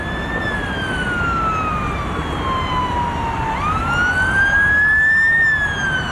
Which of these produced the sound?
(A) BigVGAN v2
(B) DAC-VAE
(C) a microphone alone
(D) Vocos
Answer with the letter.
C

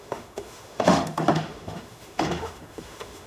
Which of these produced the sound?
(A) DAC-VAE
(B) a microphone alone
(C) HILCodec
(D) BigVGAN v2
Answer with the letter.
A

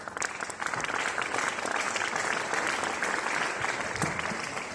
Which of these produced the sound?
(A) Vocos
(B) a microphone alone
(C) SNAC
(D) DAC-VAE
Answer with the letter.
B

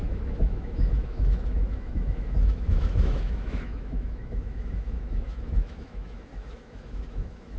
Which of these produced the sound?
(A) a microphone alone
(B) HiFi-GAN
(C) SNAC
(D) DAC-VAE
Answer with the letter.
D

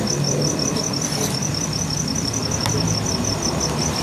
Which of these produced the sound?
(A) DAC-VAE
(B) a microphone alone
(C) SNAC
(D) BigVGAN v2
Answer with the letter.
B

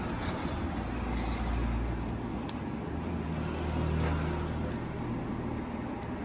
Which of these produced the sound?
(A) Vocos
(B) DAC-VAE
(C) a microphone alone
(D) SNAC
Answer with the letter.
C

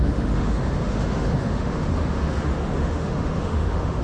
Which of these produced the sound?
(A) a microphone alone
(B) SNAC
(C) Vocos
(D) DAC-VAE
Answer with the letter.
D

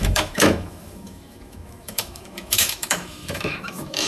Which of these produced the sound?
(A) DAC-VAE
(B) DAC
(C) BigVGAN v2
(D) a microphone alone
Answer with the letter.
A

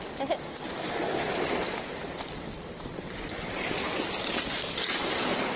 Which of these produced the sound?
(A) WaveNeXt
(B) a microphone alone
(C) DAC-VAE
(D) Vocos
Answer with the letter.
B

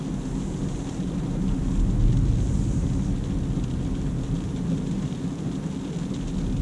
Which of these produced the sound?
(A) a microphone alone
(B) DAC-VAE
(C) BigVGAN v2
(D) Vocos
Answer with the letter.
A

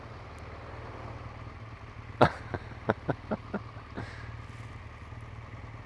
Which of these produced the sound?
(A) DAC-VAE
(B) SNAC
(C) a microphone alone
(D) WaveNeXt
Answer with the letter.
C